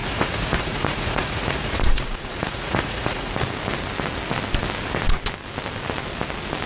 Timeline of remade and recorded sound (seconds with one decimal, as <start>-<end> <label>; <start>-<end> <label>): 0.0-3.3 remade; 3.3-6.7 recorded